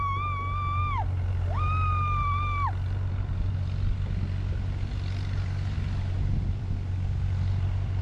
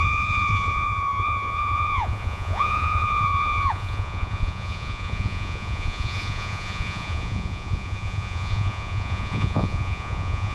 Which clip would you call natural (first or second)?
first